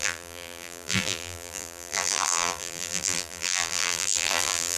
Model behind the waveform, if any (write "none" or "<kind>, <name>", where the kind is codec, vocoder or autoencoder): vocoder, BigVGAN v2